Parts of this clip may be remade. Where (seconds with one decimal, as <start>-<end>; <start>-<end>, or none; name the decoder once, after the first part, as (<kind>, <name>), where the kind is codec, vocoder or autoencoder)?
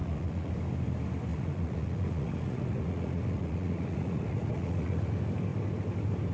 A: 0.0-0.5 (vocoder, Vocos); 1.3-5.1